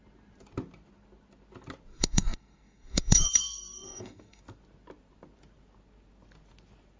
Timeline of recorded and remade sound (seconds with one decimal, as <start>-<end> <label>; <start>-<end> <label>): 0.0-1.9 recorded; 1.9-4.4 remade; 4.4-7.0 recorded